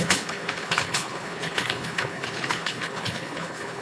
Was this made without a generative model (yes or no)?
no